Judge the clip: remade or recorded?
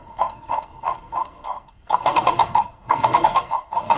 remade